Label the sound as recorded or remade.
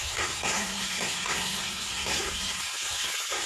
remade